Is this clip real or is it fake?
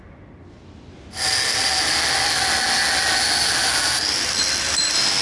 real